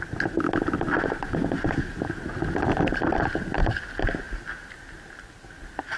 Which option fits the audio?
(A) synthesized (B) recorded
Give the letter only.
B